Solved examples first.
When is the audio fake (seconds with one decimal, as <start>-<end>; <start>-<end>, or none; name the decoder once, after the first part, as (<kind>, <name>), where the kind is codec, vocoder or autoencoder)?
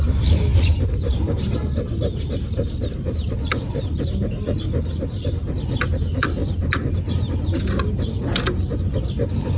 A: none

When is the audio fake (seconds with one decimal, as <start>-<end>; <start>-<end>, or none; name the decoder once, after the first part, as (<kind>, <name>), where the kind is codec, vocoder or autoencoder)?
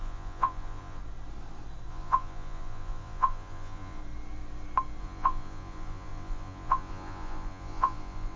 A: 0.0-1.0 (vocoder, Vocos); 1.9-4.0; 5.0-8.4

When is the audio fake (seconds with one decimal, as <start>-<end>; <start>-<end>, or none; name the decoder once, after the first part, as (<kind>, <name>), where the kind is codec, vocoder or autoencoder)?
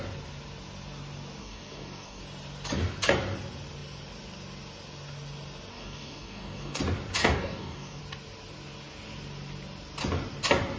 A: 1.4-2.2 (codec, DAC); 5.7-6.8; 7.2-8.0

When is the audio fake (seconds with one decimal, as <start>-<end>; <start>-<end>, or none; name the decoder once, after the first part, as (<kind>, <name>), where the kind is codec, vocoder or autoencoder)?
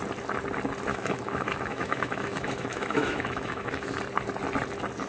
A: 0.9-4.0 (autoencoder, DAC-VAE)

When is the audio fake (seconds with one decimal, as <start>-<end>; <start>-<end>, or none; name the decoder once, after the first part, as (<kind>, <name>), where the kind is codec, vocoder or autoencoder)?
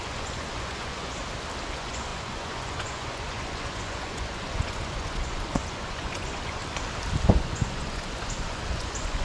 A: 0.0-1.2 (vocoder, Vocos); 1.7-6.6; 7.3-9.2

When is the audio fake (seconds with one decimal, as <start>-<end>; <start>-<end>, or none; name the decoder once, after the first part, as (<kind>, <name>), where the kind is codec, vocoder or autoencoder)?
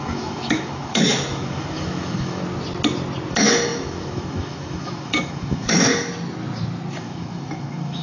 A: 0.0-2.4 (autoencoder, DAC-VAE); 3.3-5.9; 7.0-8.0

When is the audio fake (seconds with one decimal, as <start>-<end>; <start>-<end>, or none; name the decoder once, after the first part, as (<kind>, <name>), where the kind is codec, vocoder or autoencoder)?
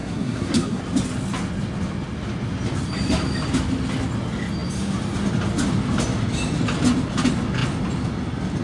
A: 0.0-0.8 (codec, SNAC)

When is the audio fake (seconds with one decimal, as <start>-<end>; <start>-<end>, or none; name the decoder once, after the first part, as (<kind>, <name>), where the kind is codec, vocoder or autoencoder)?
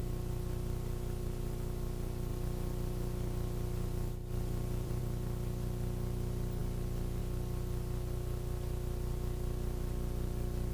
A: 2.3-5.0 (vocoder, BigVGAN v2)